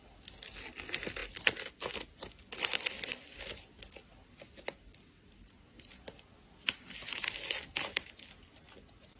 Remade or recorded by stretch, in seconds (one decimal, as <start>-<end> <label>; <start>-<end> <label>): 0.0-9.2 recorded